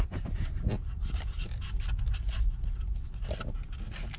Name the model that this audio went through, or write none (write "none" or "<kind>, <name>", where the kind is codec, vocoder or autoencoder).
none